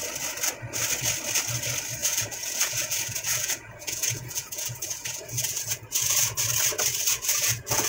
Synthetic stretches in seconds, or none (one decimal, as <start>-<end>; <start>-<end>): 2.0-6.4; 7.1-7.9